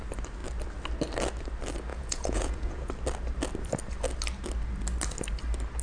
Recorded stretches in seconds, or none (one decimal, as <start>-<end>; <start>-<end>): 0.0-1.9; 2.9-5.8